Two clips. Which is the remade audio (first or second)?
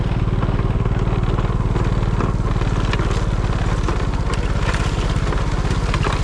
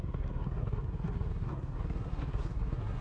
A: second